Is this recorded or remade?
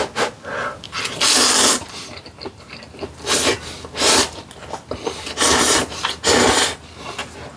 recorded